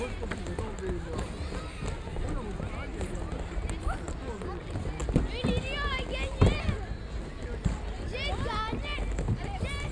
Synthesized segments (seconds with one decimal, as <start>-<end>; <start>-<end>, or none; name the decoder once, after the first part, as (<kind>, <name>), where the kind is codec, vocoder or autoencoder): none